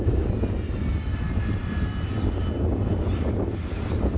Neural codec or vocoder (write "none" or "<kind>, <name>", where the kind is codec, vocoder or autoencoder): none